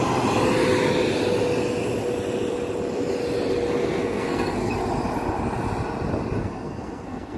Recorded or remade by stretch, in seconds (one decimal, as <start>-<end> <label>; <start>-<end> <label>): 0.0-3.8 recorded; 3.8-4.7 remade; 4.7-6.4 recorded; 6.4-7.4 remade